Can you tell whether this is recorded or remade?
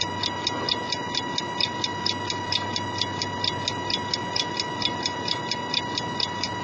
recorded